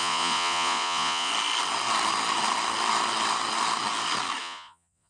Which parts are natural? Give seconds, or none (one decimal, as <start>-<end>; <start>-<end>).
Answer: 1.3-4.4